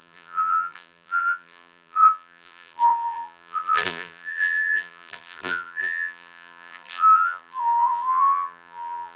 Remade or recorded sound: remade